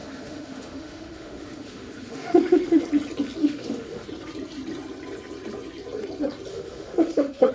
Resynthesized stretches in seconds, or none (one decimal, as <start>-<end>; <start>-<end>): 0.0-2.8; 3.4-4.1; 6.5-7.5